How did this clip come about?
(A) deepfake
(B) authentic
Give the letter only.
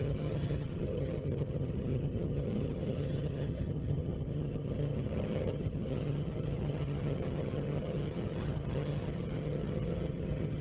A